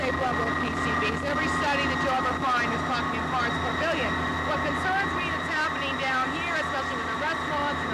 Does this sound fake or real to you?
real